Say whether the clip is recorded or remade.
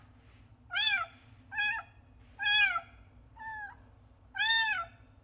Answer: recorded